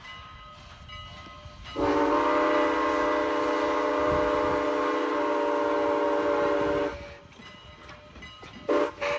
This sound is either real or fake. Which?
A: real